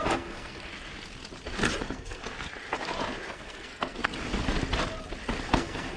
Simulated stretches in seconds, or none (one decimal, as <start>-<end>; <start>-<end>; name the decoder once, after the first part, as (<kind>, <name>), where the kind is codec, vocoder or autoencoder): 0.0-0.7 (codec, SNAC); 1.8-2.2; 3.3-4.0; 5.5-6.0